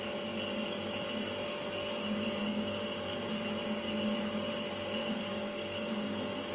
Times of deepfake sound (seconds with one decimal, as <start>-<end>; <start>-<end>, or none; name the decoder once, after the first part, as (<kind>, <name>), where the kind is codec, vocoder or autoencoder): 2.4-3.3 (codec, DAC); 5.0-6.5